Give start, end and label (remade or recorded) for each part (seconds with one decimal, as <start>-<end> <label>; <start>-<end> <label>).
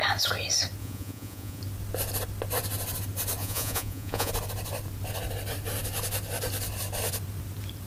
0.0-0.8 recorded; 0.8-1.6 remade; 1.6-3.4 recorded; 3.4-4.3 remade; 4.3-7.9 recorded